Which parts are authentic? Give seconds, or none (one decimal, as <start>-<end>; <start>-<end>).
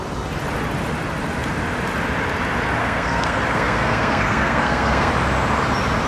0.0-2.8; 5.1-6.1